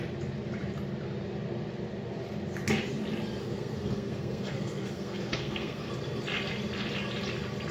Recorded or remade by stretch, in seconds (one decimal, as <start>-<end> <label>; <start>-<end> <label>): 0.0-3.4 recorded; 3.4-5.9 remade; 5.9-7.7 recorded